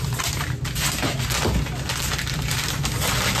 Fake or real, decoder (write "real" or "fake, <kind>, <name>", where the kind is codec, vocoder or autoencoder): real